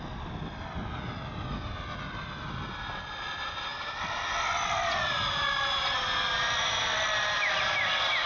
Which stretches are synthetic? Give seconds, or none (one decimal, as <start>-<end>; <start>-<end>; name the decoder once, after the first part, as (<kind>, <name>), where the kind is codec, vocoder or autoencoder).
none